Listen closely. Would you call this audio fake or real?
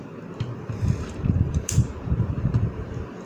fake